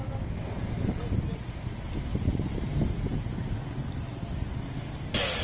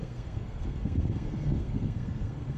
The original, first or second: first